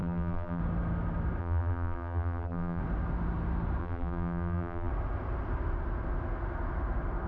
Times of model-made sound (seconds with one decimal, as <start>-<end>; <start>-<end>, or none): 0.0-0.6; 1.4-2.8; 3.8-4.9